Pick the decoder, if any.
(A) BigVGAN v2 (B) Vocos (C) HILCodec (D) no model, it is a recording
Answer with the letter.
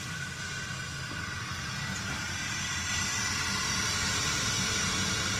D